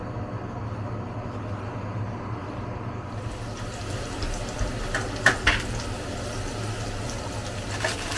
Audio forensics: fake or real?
real